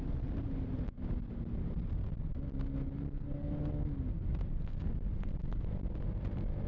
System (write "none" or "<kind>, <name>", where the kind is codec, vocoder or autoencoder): none